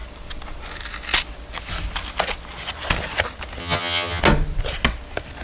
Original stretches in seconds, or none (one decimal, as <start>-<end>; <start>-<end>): 0.0-3.6; 4.2-5.4